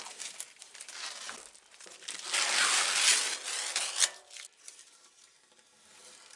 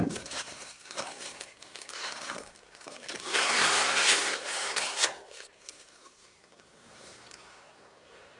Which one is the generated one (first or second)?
second